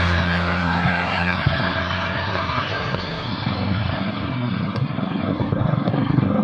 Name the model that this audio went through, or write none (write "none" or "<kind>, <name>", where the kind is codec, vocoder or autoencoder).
codec, SNAC